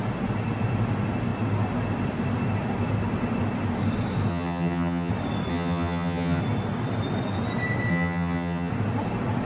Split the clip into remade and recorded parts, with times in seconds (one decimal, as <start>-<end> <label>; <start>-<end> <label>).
0.0-4.3 recorded; 4.3-5.1 remade; 5.1-5.5 recorded; 5.5-6.4 remade; 6.4-7.9 recorded; 7.9-8.7 remade; 8.7-9.5 recorded